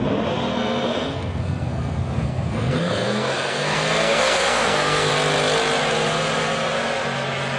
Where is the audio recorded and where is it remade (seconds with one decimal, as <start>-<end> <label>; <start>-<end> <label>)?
0.0-0.5 recorded; 0.5-5.1 remade; 5.1-7.6 recorded

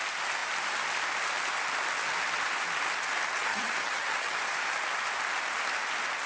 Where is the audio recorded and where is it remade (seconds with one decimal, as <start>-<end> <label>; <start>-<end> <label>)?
0.0-3.5 recorded; 3.5-4.4 remade; 4.4-6.3 recorded

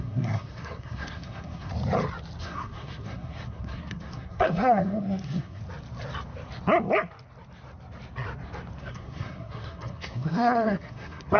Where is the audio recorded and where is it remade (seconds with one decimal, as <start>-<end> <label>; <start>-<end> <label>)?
0.0-1.7 remade; 1.7-2.4 recorded; 2.4-5.6 remade; 5.6-8.8 recorded; 8.8-11.4 remade